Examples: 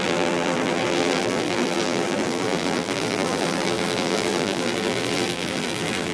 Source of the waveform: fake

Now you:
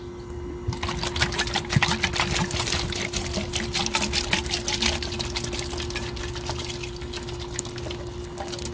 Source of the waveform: real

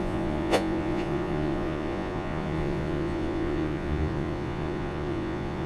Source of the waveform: fake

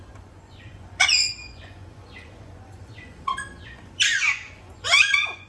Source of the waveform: fake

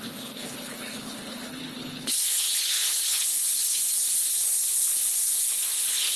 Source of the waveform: fake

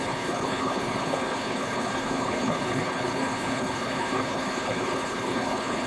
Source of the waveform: fake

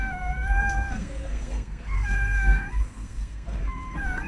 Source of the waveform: fake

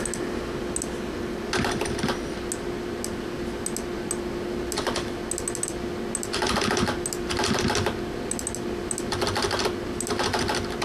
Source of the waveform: real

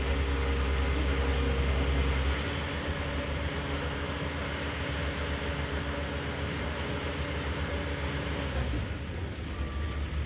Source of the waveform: real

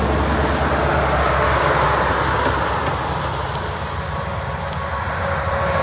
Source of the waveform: real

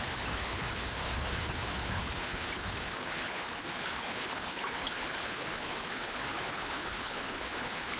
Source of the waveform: fake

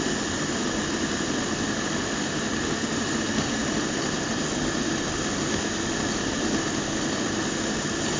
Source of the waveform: real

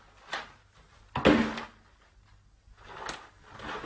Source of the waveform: real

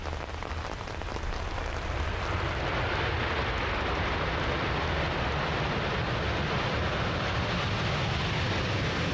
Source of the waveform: real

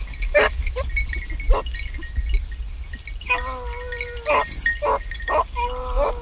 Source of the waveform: real